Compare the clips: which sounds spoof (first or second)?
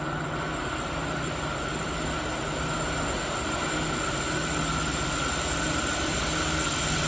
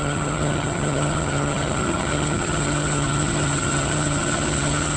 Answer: second